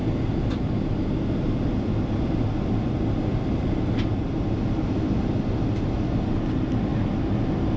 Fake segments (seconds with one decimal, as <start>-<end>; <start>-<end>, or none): none